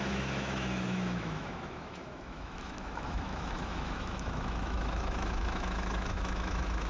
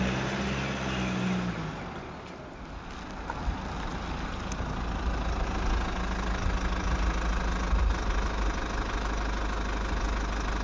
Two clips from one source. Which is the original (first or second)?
second